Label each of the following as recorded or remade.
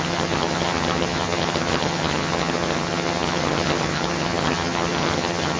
remade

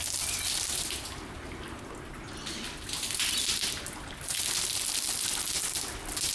recorded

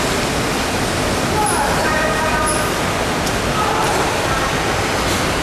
recorded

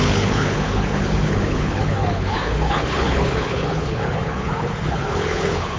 remade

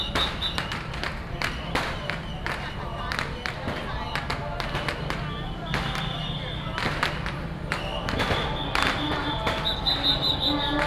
recorded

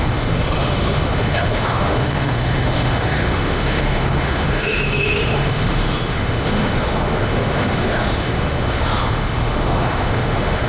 remade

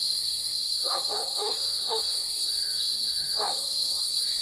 remade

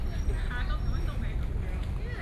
recorded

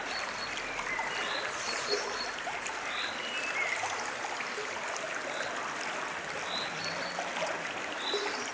recorded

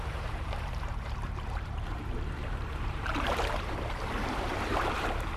remade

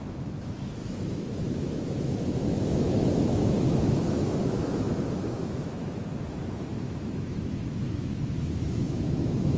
remade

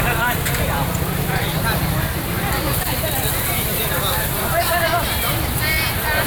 remade